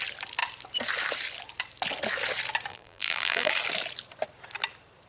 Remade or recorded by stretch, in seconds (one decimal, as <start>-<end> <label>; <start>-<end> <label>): 0.0-2.7 recorded; 2.7-3.5 remade; 3.5-5.1 recorded